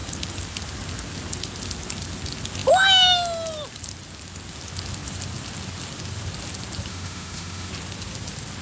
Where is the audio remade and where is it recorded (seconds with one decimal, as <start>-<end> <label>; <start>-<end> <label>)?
0.0-6.9 recorded; 6.9-7.7 remade; 7.7-8.6 recorded